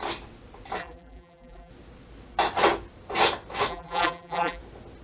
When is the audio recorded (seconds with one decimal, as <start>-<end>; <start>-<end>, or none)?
0.0-0.8; 1.7-3.7; 4.6-5.0